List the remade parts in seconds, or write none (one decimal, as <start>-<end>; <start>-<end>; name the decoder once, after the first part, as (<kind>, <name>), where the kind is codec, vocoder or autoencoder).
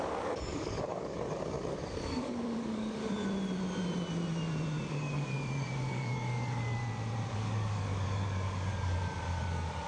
0.0-3.0 (codec, DAC); 4.9-6.8; 7.3-9.9